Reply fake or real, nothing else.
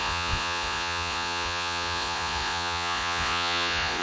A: fake